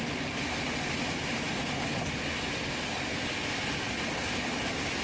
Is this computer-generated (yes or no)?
no